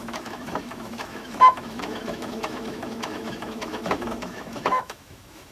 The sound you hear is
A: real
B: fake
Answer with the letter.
B